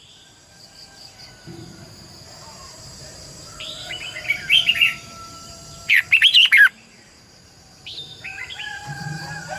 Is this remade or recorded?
remade